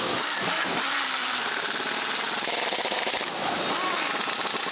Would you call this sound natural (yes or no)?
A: yes